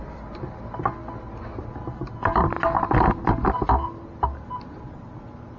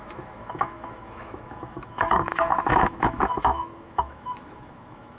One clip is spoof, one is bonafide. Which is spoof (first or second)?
second